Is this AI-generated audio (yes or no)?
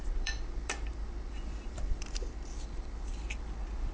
yes